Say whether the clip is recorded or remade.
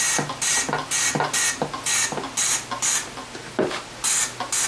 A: recorded